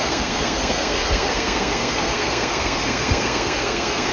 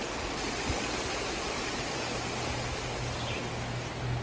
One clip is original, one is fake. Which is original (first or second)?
second